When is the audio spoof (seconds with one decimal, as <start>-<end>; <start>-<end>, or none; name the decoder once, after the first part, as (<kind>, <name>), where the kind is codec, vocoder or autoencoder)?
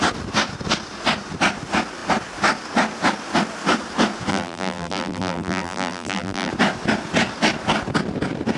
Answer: 4.3-6.5 (vocoder, BigVGAN v2)